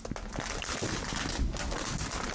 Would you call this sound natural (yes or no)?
yes